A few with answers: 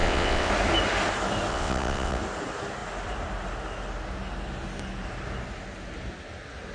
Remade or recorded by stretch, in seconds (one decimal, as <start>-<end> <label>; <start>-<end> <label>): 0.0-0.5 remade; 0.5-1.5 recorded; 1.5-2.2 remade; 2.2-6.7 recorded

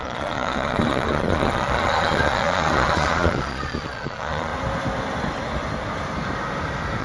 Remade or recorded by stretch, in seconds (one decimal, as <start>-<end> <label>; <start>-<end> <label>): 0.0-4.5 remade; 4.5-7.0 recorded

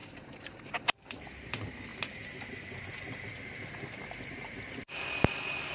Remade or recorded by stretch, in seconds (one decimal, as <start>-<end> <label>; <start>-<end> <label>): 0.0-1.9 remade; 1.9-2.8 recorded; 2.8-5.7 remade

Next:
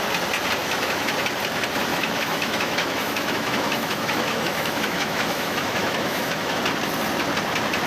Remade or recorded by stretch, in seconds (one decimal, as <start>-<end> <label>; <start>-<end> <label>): 0.0-0.6 recorded; 0.6-1.1 remade; 1.1-1.9 recorded; 1.9-6.6 remade; 6.6-7.9 recorded

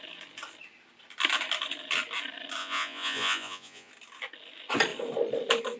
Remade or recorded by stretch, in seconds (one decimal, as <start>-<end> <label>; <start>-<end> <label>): 0.0-2.6 recorded; 2.6-3.9 remade; 3.9-5.8 recorded